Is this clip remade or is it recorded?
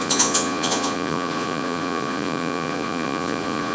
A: remade